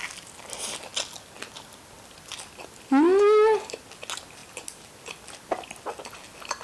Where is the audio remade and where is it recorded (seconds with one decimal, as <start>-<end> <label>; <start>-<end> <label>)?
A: 0.0-6.6 recorded